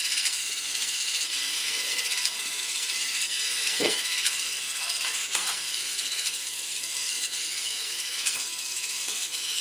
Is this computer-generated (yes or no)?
yes